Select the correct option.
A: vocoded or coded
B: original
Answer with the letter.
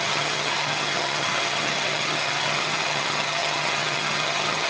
A